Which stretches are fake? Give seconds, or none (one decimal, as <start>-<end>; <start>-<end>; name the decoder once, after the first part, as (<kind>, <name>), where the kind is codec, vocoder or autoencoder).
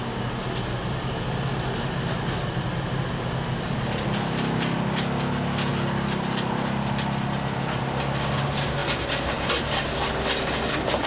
none